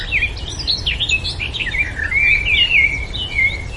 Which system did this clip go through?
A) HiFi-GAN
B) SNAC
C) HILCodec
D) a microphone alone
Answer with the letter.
D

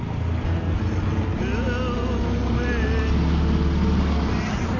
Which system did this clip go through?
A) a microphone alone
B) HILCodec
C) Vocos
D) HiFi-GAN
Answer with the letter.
A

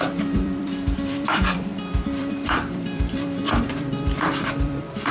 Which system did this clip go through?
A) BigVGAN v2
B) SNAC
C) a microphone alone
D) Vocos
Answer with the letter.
A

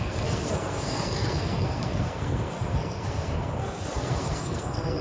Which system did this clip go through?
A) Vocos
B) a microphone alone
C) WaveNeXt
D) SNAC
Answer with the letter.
D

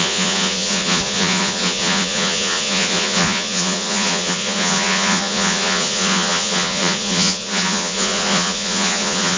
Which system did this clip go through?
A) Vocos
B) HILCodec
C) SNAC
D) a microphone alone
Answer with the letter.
A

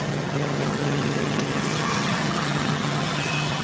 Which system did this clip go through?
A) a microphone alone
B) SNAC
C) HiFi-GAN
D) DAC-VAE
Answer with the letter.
C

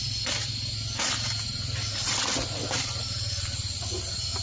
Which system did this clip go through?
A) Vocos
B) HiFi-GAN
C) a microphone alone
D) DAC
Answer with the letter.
C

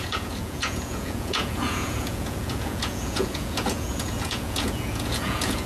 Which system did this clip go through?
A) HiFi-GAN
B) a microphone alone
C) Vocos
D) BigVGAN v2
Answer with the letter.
C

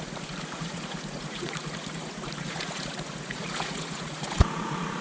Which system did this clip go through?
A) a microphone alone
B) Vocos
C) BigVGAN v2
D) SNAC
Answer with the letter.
B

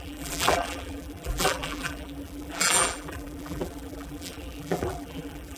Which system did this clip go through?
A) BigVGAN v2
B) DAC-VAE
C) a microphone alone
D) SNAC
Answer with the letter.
A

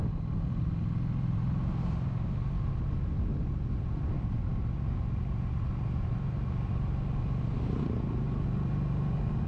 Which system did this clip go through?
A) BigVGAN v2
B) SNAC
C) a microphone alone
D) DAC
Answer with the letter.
C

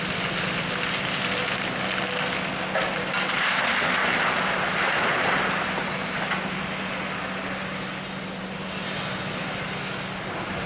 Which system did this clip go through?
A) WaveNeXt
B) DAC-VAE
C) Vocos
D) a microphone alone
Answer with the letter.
D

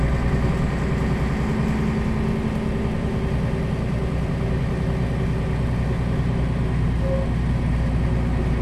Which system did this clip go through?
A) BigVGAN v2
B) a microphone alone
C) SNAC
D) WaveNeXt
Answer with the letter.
B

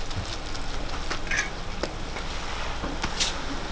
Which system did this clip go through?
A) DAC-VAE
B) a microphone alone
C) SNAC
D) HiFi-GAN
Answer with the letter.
B